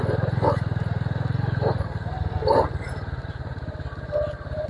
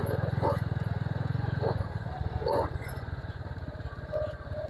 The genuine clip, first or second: first